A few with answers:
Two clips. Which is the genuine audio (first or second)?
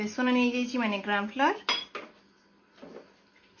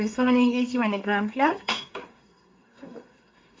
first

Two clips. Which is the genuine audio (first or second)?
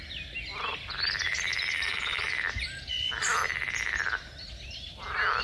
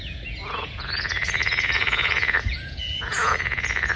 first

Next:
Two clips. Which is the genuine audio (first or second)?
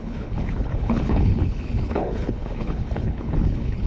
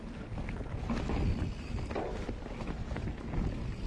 second